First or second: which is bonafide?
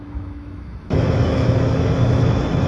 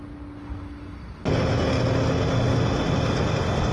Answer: second